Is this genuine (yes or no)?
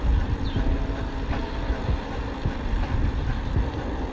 no